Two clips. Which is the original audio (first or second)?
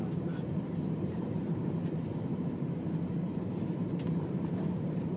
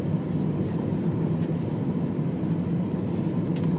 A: second